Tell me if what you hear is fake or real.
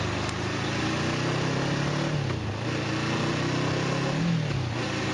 real